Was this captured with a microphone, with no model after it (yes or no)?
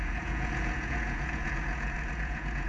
no